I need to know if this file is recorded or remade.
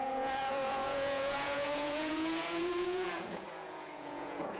remade